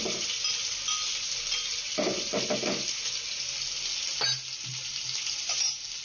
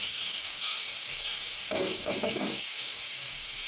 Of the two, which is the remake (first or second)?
second